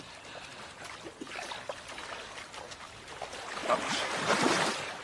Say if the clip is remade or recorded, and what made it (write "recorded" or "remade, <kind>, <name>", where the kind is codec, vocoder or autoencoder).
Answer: recorded